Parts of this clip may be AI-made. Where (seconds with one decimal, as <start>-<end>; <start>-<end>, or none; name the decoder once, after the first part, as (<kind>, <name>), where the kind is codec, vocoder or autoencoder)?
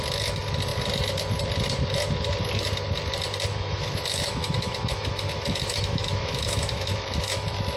3.5-7.8 (autoencoder, DAC-VAE)